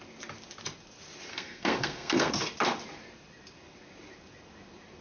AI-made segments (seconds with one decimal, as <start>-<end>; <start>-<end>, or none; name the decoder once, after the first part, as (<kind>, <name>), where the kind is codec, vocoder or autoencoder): 1.3-2.3 (codec, SNAC)